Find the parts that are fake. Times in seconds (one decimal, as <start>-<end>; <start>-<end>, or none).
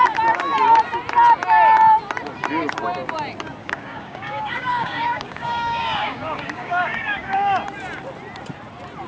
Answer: 3.6-7.6